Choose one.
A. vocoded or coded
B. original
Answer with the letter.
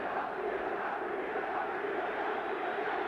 A